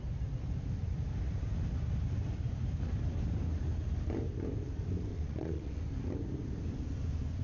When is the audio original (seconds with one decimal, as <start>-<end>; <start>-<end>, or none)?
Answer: 0.0-5.1; 5.8-7.4